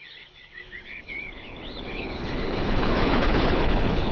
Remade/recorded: remade